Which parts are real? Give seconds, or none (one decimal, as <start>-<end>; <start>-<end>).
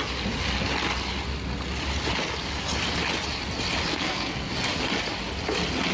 0.0-3.9; 4.5-5.9